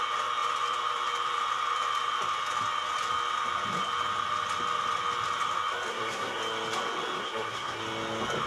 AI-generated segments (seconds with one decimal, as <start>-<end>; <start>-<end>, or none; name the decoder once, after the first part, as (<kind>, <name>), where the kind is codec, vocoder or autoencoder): 5.9-6.4 (codec, SNAC); 7.2-7.8